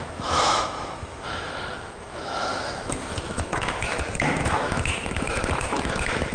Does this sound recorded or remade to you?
remade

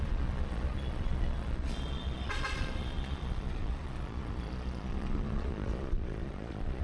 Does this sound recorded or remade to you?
remade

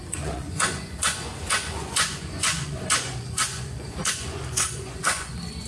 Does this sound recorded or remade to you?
remade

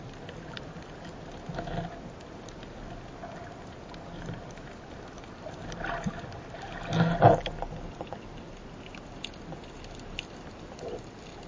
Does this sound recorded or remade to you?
recorded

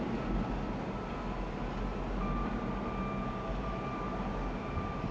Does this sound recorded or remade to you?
recorded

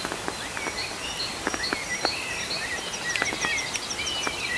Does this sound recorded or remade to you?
recorded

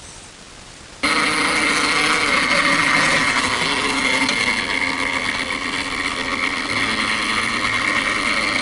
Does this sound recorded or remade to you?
recorded